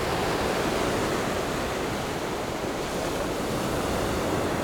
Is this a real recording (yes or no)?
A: yes